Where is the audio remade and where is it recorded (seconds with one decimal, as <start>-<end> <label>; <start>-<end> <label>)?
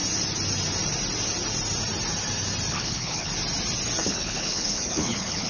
0.0-2.7 recorded; 2.7-3.3 remade; 3.3-4.0 recorded; 4.0-5.5 remade